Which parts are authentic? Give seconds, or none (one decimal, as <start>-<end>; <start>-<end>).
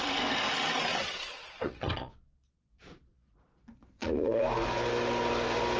0.0-0.9; 4.4-5.8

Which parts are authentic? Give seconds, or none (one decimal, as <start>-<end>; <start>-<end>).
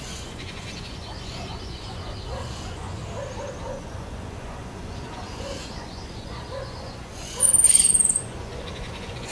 3.0-3.7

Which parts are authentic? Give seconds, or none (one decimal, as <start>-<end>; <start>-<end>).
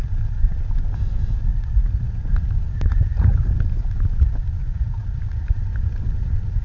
0.0-1.5; 2.3-2.9; 3.5-4.6; 5.2-6.6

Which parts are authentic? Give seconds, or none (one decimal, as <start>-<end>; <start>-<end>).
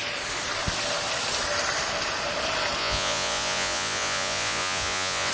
0.0-2.8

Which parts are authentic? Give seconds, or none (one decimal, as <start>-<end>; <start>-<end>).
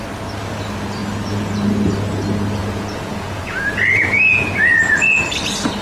0.0-2.6; 5.3-5.8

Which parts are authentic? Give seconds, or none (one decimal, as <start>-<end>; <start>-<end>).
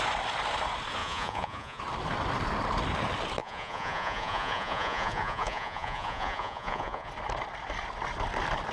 0.0-1.0; 1.8-3.4; 7.1-8.7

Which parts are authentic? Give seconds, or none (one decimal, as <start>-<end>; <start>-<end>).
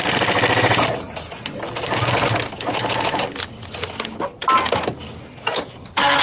0.0-6.2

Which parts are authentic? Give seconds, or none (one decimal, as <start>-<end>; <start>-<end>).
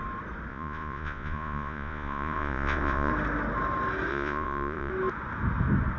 0.0-0.5; 3.1-4.1; 4.9-6.0